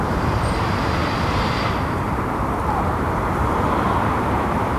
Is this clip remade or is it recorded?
remade